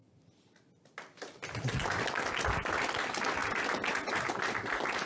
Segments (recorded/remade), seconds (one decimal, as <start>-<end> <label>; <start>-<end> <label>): 0.0-5.1 recorded